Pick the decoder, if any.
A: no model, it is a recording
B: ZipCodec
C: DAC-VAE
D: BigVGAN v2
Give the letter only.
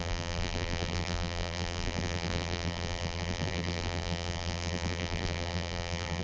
D